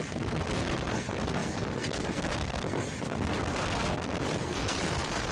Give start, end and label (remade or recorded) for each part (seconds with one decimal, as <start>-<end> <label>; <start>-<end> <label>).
0.0-5.3 remade